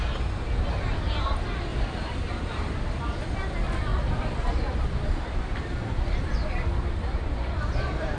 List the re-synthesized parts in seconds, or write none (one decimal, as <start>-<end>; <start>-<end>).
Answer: 1.7-3.2; 3.9-8.2